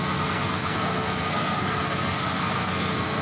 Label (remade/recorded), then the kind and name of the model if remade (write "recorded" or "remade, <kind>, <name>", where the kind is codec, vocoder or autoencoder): remade, codec, SNAC